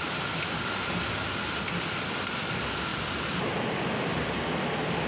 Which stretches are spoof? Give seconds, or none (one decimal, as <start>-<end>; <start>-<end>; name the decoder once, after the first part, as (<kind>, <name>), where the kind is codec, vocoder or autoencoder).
2.9-3.4 (vocoder, BigVGAN v2)